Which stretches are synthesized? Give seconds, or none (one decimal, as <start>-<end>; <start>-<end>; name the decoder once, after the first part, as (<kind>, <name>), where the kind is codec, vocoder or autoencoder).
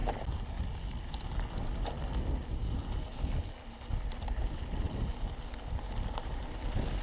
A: none